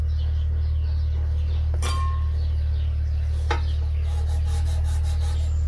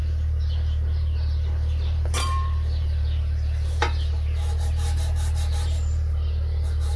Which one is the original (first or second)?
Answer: first